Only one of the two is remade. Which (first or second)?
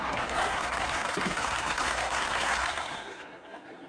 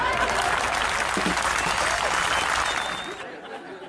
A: first